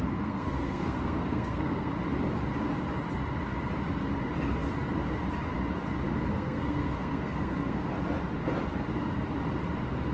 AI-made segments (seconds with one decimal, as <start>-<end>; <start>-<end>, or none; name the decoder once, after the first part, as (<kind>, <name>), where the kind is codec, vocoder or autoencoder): 0.0-1.9 (codec, SNAC); 6.3-7.9